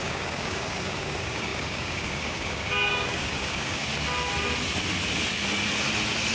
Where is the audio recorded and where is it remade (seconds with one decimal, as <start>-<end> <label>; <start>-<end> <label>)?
0.0-3.8 remade; 3.8-6.3 recorded